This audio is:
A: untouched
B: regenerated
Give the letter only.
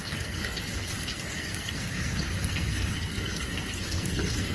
B